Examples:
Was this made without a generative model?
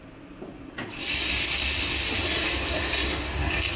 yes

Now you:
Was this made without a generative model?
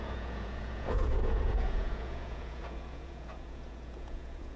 no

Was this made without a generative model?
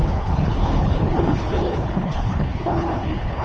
no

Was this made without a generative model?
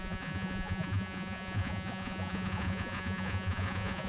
no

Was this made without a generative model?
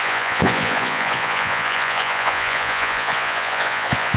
no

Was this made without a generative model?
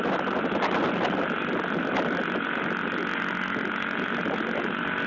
yes